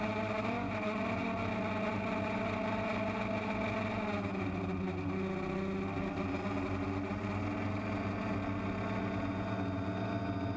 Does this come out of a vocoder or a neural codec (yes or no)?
no